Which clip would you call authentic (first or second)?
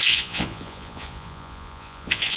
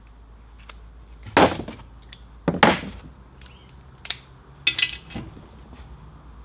second